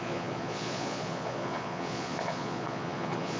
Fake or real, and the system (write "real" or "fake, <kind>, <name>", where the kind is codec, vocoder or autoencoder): fake, vocoder, Vocos